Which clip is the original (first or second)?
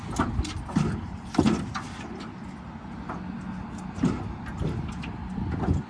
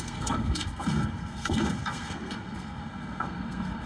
first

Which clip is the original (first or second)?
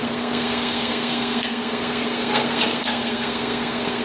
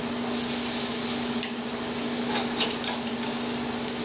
second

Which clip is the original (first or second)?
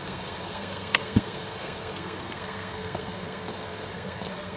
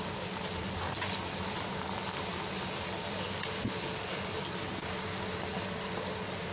second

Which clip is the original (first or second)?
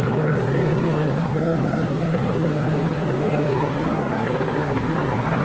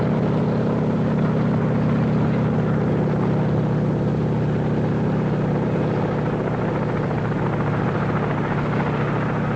second